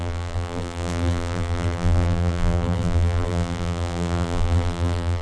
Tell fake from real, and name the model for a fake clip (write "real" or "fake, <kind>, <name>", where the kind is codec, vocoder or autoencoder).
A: fake, vocoder, BigVGAN v2